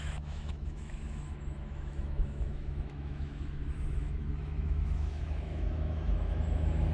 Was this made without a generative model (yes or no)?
no